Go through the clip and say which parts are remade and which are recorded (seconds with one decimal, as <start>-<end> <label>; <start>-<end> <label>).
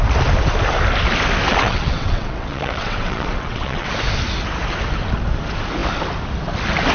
0.0-1.5 recorded; 1.5-3.9 remade; 3.9-6.9 recorded